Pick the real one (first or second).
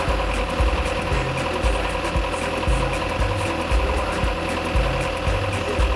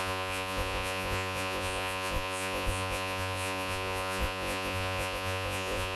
first